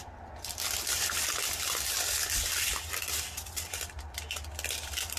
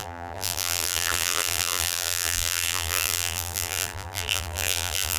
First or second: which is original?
first